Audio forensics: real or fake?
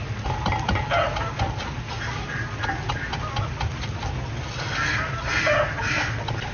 real